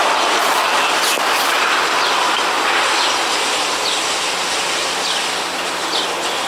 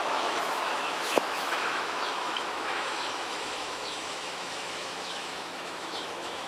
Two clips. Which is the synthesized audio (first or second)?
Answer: second